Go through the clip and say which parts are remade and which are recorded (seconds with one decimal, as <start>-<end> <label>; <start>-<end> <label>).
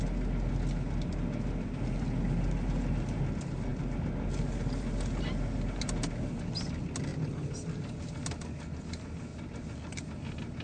0.0-10.6 recorded